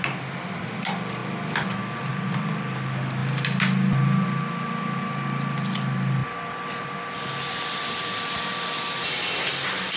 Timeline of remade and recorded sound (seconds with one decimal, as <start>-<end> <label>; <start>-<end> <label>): 0.0-10.0 recorded